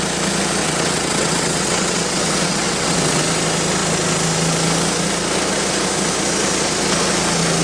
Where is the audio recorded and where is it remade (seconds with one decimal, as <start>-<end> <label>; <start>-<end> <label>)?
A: 0.0-0.6 recorded; 0.6-3.2 remade; 3.2-7.6 recorded